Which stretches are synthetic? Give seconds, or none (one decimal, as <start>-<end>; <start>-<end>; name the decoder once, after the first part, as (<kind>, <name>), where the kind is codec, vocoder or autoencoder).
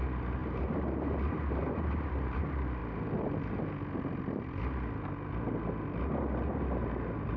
0.4-2.4 (vocoder, BigVGAN v2)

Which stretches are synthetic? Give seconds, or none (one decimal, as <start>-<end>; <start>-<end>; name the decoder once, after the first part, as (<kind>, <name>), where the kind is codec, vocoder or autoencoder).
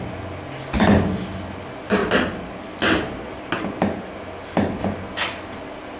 2.0-2.7 (vocoder, BigVGAN v2)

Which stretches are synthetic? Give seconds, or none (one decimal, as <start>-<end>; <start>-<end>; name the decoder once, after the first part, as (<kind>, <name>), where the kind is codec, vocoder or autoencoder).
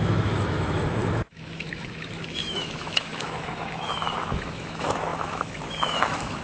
0.0-6.4 (autoencoder, DAC-VAE)